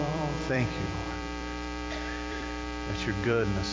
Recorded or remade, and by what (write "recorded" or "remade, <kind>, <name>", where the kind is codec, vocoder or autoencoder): remade, vocoder, BigVGAN v2